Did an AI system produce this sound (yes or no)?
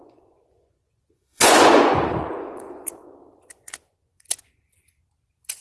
yes